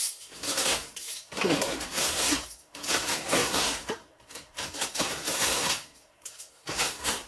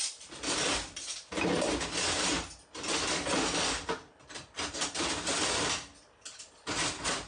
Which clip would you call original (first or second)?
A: second